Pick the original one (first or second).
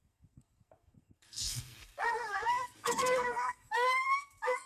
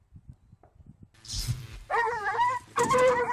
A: second